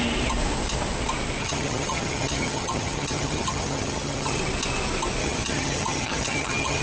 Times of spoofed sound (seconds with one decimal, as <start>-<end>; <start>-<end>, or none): 1.4-4.4; 5.2-6.8

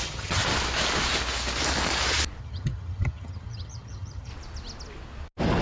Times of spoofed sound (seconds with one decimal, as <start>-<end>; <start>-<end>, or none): 0.0-0.4; 2.4-4.3

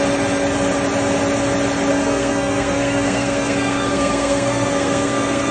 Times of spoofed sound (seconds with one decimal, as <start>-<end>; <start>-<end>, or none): 1.9-5.5

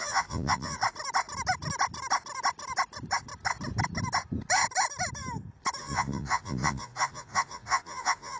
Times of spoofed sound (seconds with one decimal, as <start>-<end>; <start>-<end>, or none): 0.0-0.8; 5.8-8.4